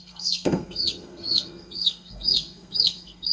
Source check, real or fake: fake